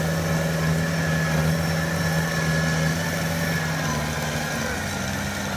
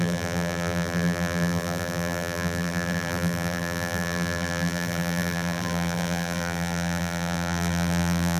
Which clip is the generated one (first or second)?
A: second